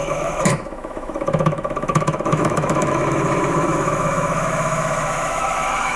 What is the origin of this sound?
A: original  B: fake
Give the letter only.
B